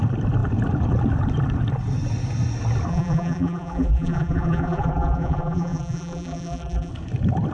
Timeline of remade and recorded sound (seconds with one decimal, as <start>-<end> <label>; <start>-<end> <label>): 0.0-2.9 recorded; 2.9-6.9 remade; 6.9-7.5 recorded

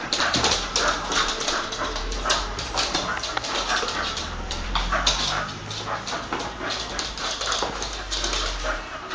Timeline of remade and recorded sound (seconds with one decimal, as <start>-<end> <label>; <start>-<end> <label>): 0.0-5.6 remade; 5.6-7.0 recorded; 7.0-9.1 remade

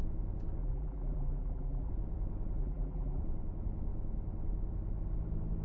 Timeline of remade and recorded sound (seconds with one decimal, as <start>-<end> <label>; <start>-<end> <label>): 0.0-0.6 recorded; 0.6-1.9 remade; 1.9-2.6 recorded; 2.6-3.2 remade; 3.2-5.6 recorded